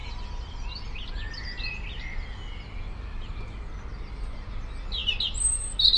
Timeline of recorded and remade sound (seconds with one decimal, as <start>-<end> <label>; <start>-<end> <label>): 0.0-1.1 remade; 1.1-2.1 recorded; 2.1-2.6 remade; 2.6-6.0 recorded